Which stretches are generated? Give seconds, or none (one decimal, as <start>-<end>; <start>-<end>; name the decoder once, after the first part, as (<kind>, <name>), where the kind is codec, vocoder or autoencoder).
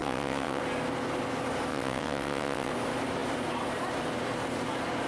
0.0-0.6 (vocoder, WaveNeXt); 1.7-2.7